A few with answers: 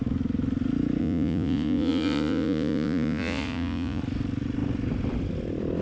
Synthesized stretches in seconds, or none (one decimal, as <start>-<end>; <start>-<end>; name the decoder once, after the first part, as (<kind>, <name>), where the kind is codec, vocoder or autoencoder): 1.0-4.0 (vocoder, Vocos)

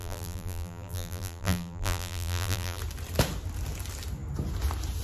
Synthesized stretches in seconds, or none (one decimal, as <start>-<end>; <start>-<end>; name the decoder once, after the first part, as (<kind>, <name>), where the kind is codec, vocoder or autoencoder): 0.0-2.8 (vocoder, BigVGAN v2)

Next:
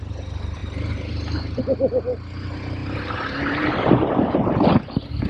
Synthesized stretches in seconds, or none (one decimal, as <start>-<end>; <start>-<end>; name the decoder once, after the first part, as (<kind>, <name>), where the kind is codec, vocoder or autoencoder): 0.6-1.6 (vocoder, BigVGAN v2); 2.8-4.7

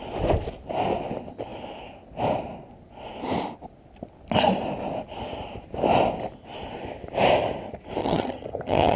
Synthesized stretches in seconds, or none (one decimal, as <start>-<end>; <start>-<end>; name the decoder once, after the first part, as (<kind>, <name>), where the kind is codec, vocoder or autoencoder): 8.0-9.0 (vocoder, HiFi-GAN)

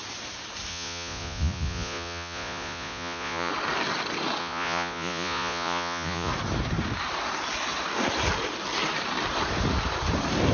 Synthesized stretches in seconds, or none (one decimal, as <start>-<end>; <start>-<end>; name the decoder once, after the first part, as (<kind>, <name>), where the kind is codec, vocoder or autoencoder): 0.7-3.5 (vocoder, Vocos); 4.4-6.3

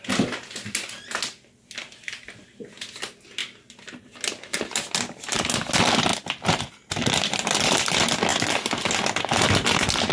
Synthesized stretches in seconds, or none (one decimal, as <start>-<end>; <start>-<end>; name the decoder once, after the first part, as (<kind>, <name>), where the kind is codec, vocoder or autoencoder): none

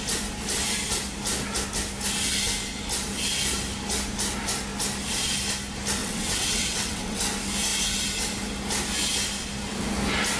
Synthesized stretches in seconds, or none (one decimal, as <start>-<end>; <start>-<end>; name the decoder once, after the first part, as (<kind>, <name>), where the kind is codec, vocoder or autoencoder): 6.0-7.2 (vocoder, WaveNeXt)

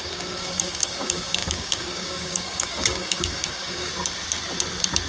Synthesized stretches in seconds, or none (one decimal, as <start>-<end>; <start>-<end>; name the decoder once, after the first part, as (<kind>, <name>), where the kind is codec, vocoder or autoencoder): 0.0-3.9 (codec, DAC)